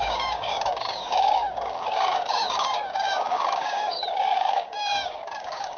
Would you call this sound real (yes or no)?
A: no